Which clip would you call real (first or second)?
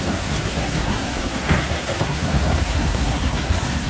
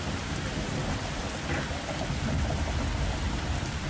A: second